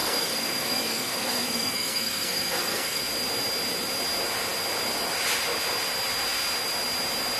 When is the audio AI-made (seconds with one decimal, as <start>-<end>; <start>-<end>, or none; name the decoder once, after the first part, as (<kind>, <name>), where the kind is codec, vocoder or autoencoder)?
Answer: 0.0-3.0 (codec, SNAC)